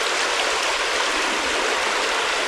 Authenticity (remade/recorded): recorded